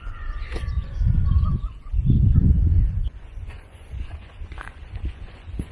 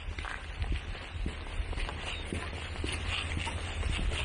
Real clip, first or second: second